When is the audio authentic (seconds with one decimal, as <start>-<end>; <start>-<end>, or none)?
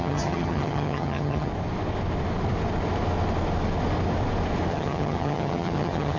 1.5-4.7